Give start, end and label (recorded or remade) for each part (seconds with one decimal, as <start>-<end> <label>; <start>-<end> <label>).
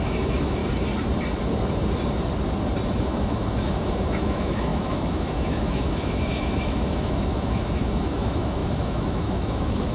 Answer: 0.0-0.6 remade; 0.6-3.0 recorded; 3.0-9.9 remade